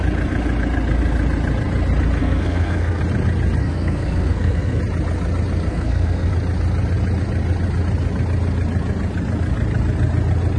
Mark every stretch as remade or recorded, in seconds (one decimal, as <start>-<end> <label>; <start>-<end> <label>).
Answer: 0.0-2.2 recorded; 2.2-3.0 remade; 3.0-3.6 recorded; 3.6-4.8 remade; 4.8-5.7 recorded; 5.7-6.3 remade; 6.3-10.6 recorded